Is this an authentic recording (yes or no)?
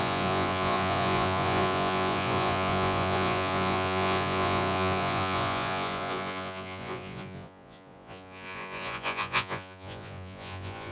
no